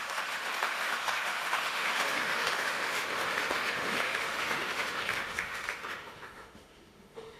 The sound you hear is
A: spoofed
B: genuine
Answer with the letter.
A